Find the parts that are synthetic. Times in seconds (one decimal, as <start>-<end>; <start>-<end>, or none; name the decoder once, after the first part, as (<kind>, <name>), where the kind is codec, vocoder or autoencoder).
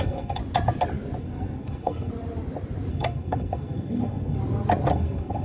0.0-0.4 (codec, SNAC); 1.2-2.1; 2.9-4.4; 4.9-5.4